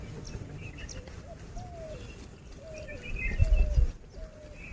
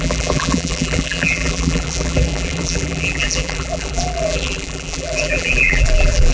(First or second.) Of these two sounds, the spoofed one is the second